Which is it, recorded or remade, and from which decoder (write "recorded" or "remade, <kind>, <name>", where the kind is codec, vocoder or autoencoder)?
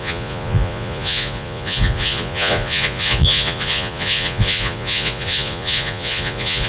remade, vocoder, Vocos